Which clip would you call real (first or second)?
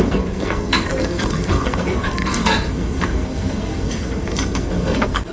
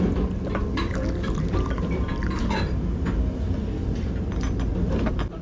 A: second